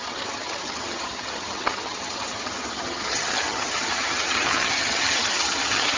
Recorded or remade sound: remade